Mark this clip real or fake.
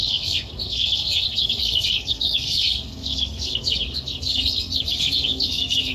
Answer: fake